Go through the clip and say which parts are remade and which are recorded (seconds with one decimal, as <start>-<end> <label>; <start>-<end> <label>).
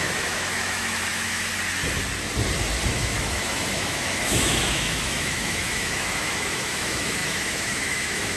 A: 0.0-1.5 remade; 1.5-2.9 recorded; 2.9-8.4 remade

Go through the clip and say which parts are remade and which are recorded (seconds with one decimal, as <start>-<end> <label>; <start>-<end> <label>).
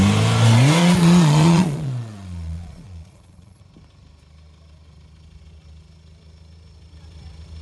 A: 0.0-0.8 recorded; 0.8-3.6 remade; 3.6-7.6 recorded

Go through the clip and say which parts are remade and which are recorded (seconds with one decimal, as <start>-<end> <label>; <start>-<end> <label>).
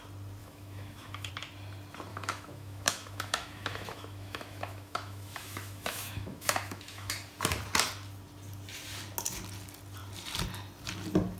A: 0.0-0.4 recorded; 0.4-1.3 remade; 1.3-2.1 recorded; 2.1-7.1 remade; 7.1-11.4 recorded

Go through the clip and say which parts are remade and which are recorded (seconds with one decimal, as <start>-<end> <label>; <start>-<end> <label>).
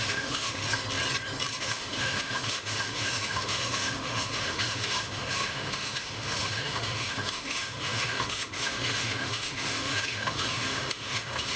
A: 0.0-0.6 remade; 0.6-1.6 recorded; 1.6-11.6 remade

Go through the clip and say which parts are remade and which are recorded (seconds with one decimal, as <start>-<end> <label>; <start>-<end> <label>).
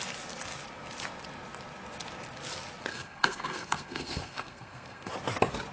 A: 0.0-2.9 recorded; 2.9-5.1 remade; 5.1-5.7 recorded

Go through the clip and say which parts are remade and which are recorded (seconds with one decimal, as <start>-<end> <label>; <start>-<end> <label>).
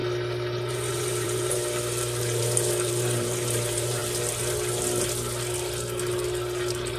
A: 0.0-0.7 recorded; 0.7-1.6 remade; 1.6-2.2 recorded; 2.2-4.0 remade; 4.0-7.0 recorded